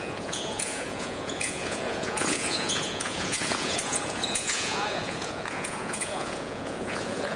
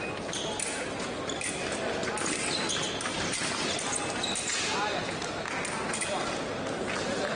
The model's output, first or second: first